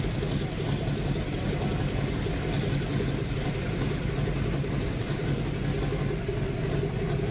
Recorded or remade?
recorded